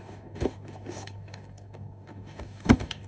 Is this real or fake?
fake